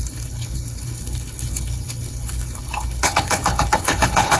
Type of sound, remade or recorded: remade